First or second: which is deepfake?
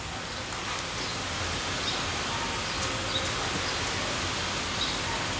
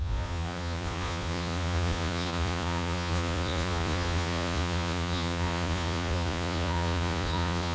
second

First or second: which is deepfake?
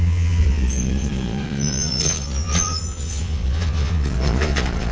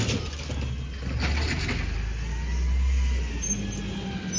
first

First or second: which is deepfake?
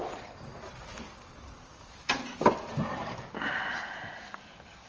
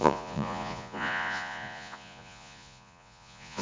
second